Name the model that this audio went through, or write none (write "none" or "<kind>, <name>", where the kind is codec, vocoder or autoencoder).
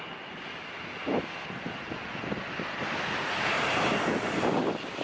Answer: none